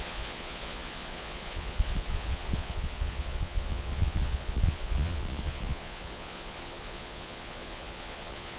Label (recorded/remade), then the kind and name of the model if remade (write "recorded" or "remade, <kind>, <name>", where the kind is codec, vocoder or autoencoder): remade, vocoder, Vocos